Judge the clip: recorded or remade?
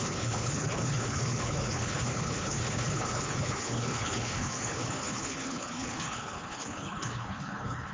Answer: remade